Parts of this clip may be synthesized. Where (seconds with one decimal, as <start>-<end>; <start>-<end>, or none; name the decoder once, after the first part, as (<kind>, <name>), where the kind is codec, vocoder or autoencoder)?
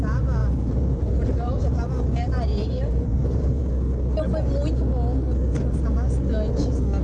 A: 0.4-3.6 (vocoder, BigVGAN v2)